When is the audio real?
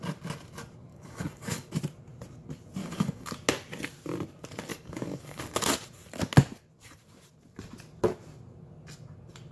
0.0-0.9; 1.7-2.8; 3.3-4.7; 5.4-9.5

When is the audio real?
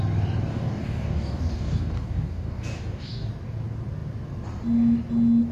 0.0-0.5; 3.3-5.5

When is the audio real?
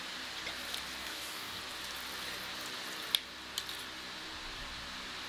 0.0-1.0; 1.6-5.3